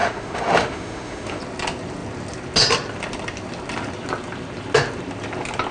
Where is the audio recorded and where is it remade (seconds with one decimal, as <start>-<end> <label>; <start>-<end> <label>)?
0.0-1.4 remade; 1.4-5.7 recorded